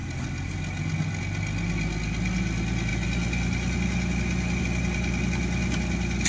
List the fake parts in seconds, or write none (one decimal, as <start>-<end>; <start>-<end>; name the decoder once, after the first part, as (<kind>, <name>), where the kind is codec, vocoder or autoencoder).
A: none